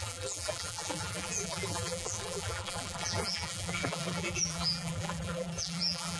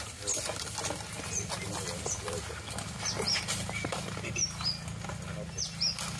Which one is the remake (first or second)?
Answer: first